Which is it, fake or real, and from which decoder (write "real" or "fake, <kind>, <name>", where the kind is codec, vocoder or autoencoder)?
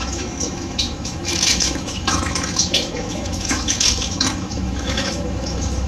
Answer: fake, autoencoder, DAC-VAE